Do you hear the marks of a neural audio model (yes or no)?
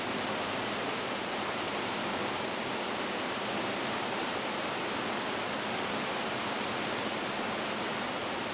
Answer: yes